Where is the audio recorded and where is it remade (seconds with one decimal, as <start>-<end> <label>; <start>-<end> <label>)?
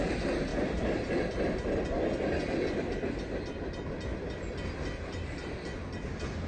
0.0-6.5 recorded